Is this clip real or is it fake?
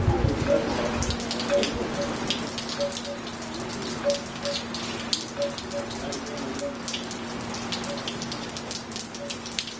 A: real